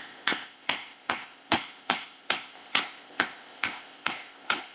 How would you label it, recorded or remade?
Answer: remade